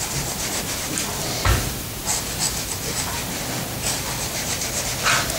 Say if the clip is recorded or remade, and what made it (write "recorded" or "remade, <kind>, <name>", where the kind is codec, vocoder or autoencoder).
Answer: recorded